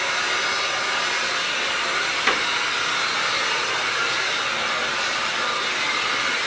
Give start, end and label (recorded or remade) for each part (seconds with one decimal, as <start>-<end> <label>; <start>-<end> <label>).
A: 0.0-6.5 recorded